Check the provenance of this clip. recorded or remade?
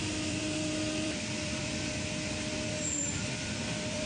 remade